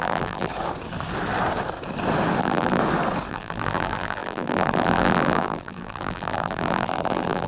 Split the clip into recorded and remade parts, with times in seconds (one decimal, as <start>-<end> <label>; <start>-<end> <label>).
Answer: 0.0-0.5 remade; 0.5-2.4 recorded; 2.4-2.8 remade; 2.8-3.3 recorded; 3.3-7.5 remade